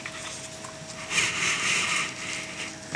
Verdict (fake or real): real